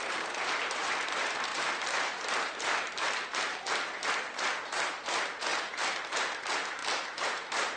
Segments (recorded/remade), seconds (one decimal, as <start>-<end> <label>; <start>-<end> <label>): 0.0-4.0 remade; 4.0-4.7 recorded; 4.7-7.8 remade